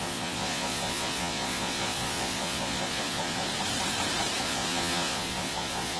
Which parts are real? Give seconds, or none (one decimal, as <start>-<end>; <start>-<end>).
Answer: 3.5-4.4